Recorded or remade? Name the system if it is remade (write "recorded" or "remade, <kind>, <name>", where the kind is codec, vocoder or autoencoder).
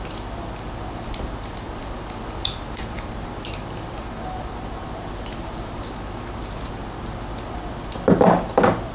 recorded